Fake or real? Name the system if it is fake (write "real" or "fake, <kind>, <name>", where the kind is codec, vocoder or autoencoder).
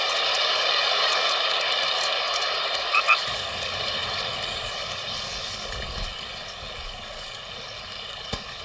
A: fake, codec, DAC